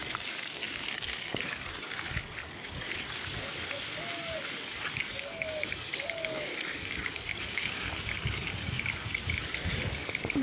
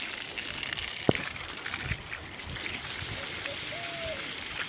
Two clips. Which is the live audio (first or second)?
second